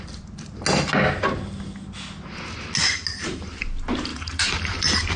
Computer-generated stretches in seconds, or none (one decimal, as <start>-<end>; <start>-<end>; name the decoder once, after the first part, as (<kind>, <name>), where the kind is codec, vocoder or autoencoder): 4.1-4.8 (vocoder, BigVGAN v2)